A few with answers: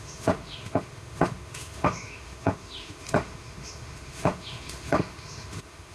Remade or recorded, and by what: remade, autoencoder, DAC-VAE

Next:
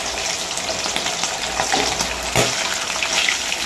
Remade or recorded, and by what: recorded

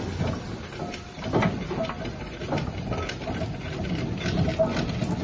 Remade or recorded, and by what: recorded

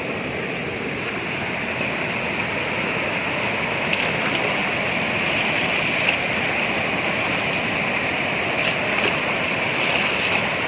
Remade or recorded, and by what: recorded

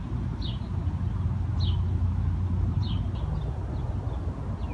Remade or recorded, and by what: recorded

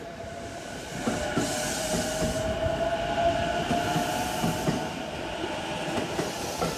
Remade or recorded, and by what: recorded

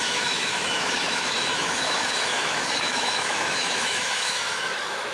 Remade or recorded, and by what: remade, autoencoder, DAC-VAE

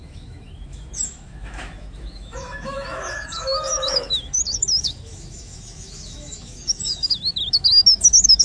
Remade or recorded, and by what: remade, autoencoder, DAC-VAE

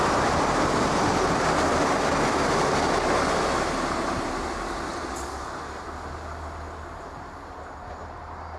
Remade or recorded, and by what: recorded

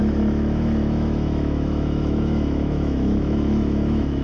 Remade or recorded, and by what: remade, autoencoder, DAC-VAE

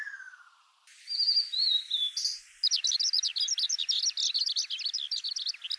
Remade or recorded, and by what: recorded